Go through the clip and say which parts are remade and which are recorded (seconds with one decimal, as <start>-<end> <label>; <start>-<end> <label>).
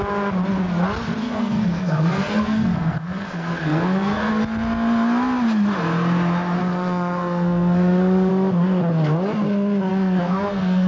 0.0-1.2 recorded; 1.2-4.3 remade; 4.3-6.6 recorded; 6.6-8.3 remade; 8.3-9.9 recorded; 9.9-10.9 remade